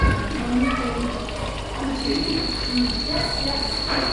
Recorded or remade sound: recorded